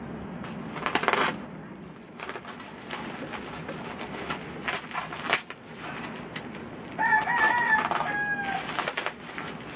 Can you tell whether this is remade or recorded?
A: recorded